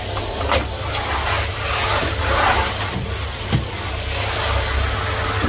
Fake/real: real